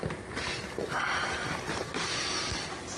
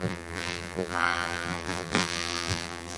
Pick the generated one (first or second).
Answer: second